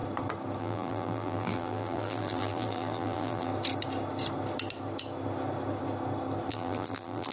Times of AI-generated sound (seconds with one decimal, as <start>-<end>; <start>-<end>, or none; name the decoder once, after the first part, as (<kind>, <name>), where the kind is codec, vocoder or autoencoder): 0.6-3.5 (vocoder, BigVGAN v2); 6.5-7.3